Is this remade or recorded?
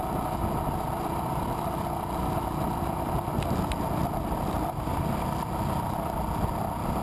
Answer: recorded